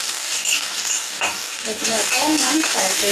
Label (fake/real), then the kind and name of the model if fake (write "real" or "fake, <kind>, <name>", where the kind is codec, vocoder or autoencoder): fake, codec, DAC